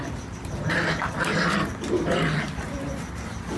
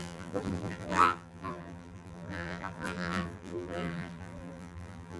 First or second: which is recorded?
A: first